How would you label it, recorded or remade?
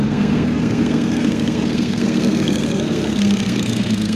remade